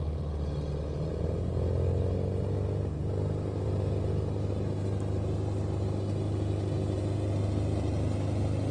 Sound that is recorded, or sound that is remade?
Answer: recorded